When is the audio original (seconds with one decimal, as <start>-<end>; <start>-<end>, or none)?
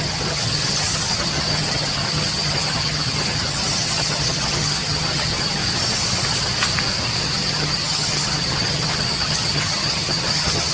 5.6-7.2